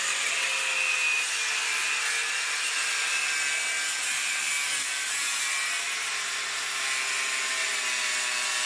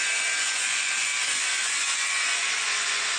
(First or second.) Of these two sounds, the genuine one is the first